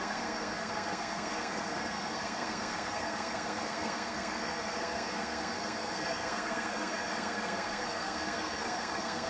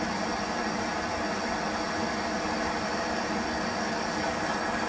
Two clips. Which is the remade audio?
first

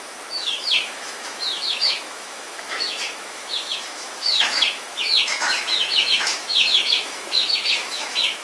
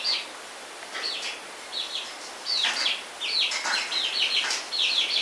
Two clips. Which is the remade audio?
first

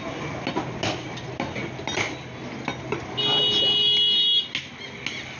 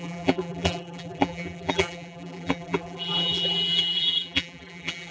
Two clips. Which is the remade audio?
second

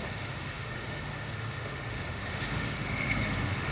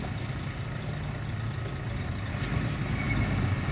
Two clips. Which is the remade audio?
first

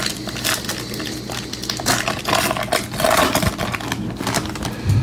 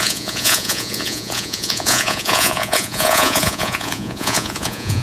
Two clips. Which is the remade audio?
second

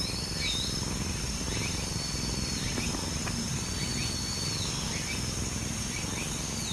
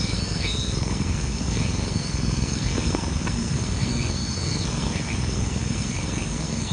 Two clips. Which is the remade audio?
second